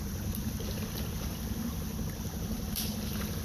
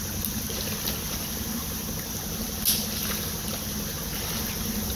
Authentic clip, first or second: second